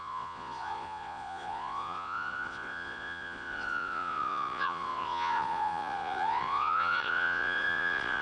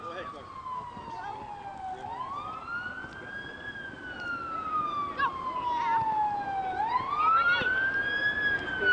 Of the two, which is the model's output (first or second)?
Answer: first